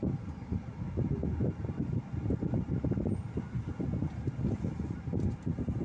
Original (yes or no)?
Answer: yes